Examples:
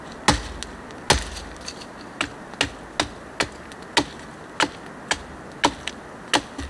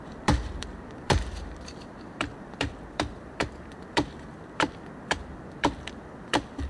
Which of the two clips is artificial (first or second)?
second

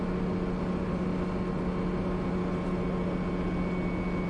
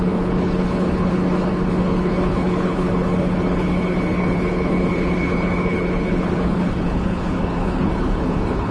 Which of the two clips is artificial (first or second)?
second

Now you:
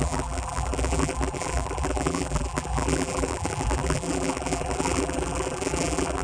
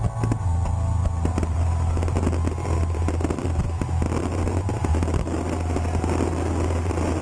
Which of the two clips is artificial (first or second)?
first